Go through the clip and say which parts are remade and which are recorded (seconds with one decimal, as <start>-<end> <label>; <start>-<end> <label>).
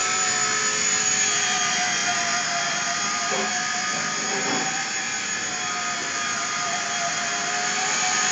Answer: 0.0-8.3 recorded